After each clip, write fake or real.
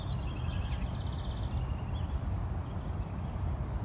real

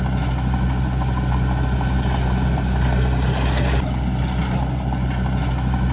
real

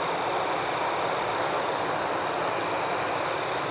real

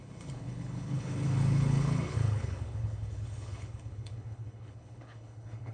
fake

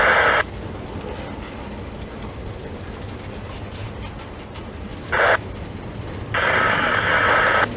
real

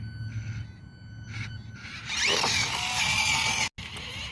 real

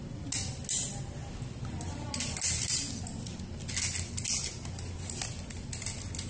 real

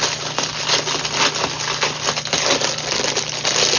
real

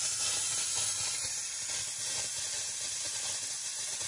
real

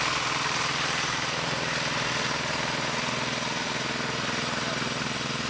real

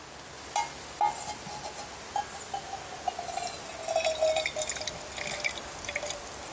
real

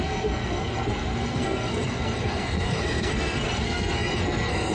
fake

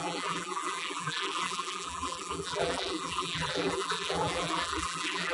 fake